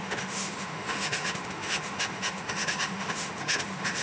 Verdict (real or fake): fake